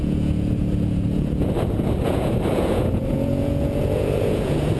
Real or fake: fake